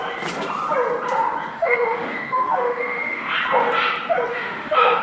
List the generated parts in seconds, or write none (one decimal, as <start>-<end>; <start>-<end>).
1.5-3.3; 4.3-5.0